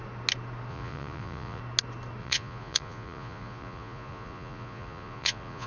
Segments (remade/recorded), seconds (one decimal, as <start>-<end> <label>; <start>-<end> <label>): 0.0-0.7 recorded; 0.7-1.6 remade; 1.6-2.2 recorded; 2.2-5.7 remade